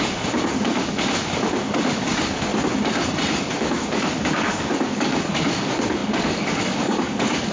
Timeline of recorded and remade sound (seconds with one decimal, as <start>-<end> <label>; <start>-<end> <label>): 0.0-2.5 remade; 2.5-3.4 recorded; 3.4-7.5 remade